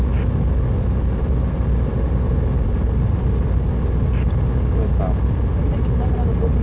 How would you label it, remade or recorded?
recorded